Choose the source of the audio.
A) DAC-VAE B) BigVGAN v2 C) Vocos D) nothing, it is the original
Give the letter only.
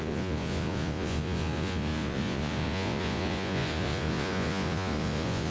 C